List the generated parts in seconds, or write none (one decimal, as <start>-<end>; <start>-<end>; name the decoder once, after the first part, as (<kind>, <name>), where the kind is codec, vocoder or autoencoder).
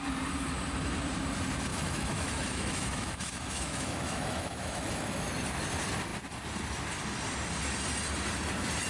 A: 1.7-5.3 (autoencoder, DAC-VAE)